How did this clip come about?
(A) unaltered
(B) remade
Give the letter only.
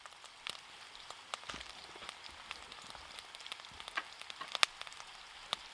A